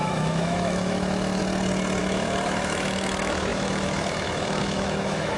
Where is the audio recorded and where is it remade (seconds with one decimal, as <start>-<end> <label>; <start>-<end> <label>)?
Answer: 0.0-1.4 remade; 1.4-2.0 recorded; 2.0-5.4 remade